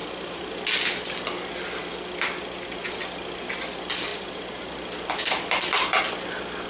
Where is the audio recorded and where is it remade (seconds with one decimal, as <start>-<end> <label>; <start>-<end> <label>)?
0.0-0.5 remade; 0.5-4.1 recorded; 4.1-4.7 remade; 4.7-5.2 recorded; 5.2-6.0 remade; 6.0-6.7 recorded